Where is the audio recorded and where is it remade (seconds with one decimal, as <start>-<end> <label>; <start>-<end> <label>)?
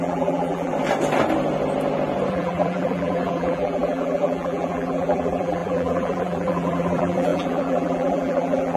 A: 0.0-0.7 remade; 0.7-2.3 recorded; 2.3-8.8 remade